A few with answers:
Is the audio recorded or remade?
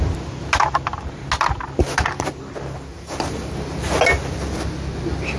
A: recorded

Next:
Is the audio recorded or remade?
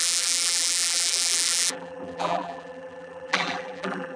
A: remade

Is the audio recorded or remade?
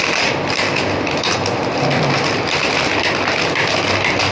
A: recorded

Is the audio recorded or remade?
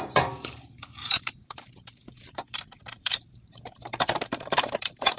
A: remade